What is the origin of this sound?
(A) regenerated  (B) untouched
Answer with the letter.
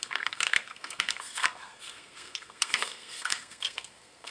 A